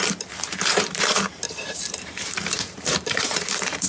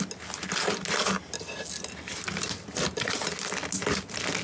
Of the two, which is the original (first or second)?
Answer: second